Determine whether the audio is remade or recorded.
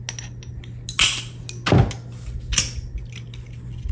recorded